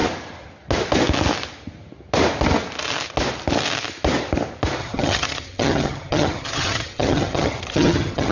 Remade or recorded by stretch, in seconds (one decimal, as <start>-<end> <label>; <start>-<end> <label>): 0.0-4.8 recorded; 4.8-8.3 remade